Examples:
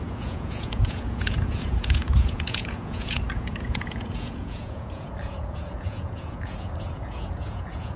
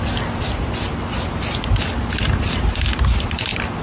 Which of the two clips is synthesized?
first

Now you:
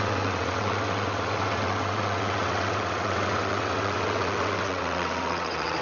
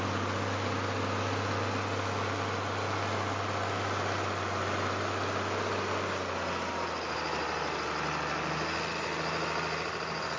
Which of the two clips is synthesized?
first